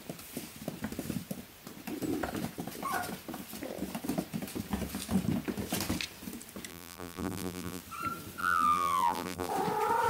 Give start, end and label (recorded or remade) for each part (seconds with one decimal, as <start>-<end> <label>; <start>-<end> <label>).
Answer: 0.0-6.7 recorded; 6.7-7.8 remade; 7.8-8.4 recorded; 8.4-9.5 remade; 9.5-10.1 recorded